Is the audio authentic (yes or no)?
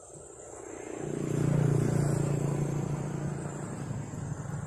yes